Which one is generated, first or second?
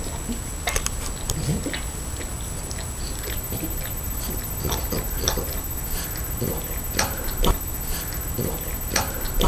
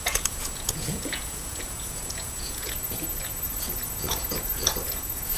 second